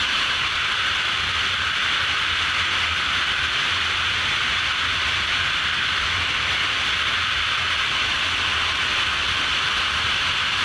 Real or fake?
real